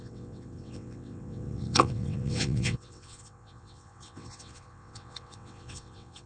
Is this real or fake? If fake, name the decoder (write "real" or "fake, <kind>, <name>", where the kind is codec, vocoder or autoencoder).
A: fake, vocoder, WaveNeXt